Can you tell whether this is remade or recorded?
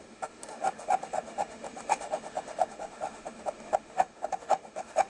remade